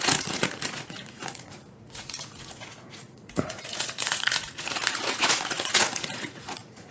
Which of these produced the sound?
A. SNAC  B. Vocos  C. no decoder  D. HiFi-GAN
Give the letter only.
B